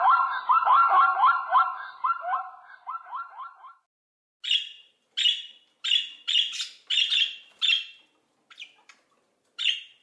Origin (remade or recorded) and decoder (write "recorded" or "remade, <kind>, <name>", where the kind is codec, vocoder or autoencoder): recorded